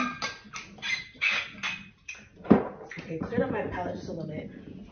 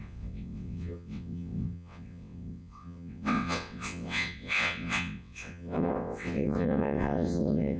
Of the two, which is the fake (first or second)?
second